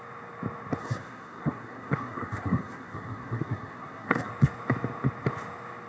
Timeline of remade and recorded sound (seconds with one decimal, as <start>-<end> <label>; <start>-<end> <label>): 0.0-0.8 recorded; 0.8-4.3 remade; 4.3-5.9 recorded